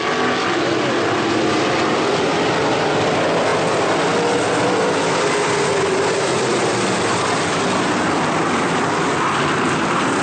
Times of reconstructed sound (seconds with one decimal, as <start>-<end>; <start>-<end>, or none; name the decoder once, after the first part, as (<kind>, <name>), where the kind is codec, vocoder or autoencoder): none